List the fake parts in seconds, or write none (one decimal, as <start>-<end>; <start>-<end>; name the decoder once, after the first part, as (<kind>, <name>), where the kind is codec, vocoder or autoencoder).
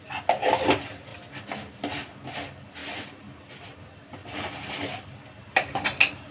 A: 4.2-6.3 (vocoder, BigVGAN v2)